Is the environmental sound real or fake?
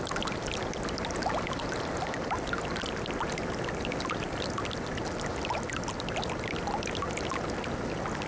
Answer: real